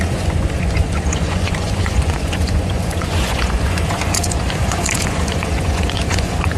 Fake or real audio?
fake